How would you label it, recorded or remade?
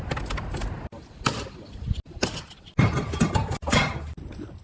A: recorded